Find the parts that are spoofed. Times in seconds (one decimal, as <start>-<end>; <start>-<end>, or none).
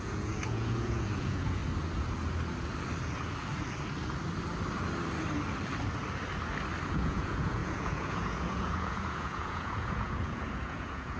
0.0-1.6; 6.9-11.2